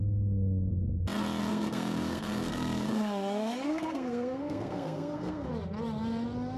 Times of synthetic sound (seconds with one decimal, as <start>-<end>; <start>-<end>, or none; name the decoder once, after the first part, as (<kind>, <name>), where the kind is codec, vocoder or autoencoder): 1.5-5.5 (codec, SNAC)